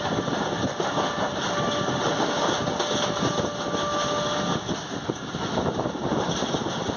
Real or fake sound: real